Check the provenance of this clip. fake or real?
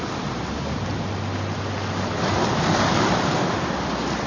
real